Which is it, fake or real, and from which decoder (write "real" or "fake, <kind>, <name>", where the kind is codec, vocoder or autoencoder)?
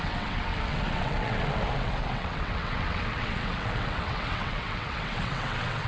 fake, vocoder, WaveNeXt